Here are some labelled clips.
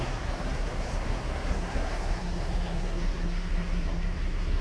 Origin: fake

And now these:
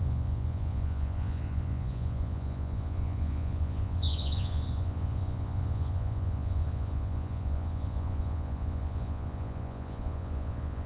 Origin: fake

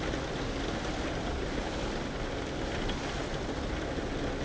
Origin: real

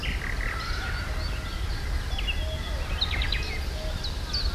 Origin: real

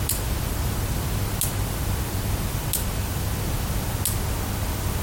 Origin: real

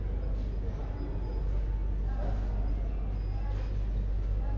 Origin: real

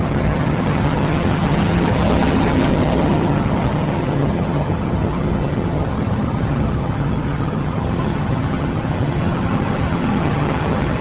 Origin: fake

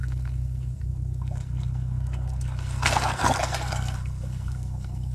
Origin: fake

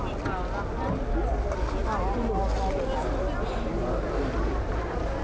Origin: real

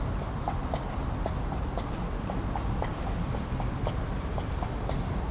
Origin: real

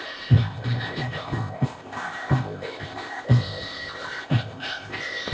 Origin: fake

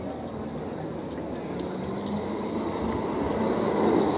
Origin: real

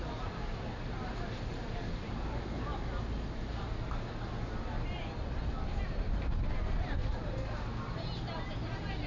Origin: real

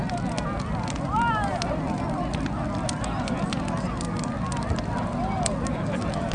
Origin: real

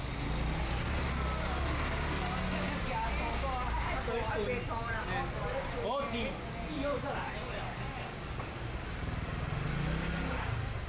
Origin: real